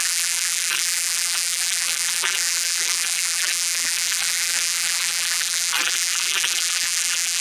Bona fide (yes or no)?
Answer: no